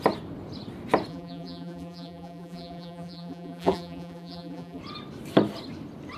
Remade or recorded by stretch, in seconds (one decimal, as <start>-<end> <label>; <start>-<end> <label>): 0.0-1.1 recorded; 1.1-4.8 remade; 4.8-6.2 recorded